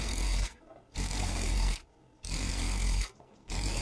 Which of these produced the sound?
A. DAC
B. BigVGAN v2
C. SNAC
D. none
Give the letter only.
C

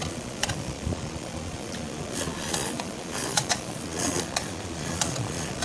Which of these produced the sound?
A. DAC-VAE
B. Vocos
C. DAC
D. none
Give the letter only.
B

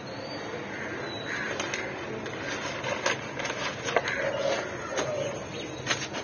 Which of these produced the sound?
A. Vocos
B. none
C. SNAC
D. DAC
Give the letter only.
B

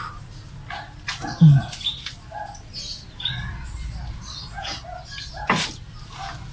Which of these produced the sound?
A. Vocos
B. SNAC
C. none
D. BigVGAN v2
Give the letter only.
C